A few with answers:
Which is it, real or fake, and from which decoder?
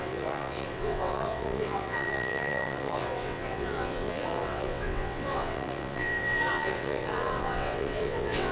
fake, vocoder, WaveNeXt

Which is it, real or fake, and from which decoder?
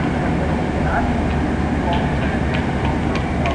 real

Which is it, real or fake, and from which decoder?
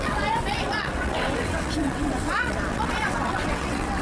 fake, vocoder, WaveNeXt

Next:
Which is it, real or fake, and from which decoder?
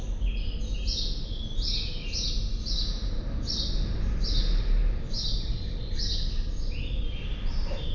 real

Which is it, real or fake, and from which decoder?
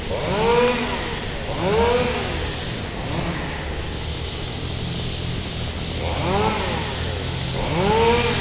real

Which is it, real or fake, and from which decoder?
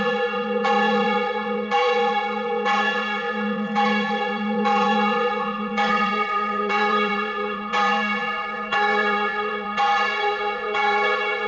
fake, vocoder, WaveNeXt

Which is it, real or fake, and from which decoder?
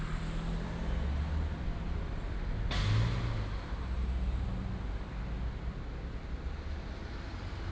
real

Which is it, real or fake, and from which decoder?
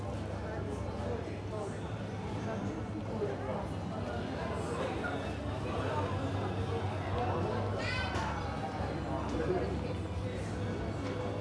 real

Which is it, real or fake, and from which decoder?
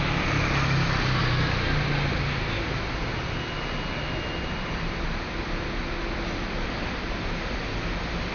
real